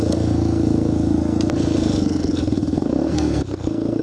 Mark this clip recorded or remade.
remade